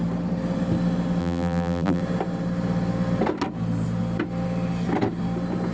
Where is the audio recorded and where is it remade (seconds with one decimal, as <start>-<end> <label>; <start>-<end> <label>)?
0.0-1.2 recorded; 1.2-2.0 remade; 2.0-5.7 recorded